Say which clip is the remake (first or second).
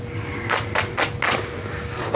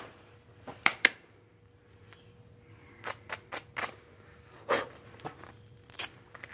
second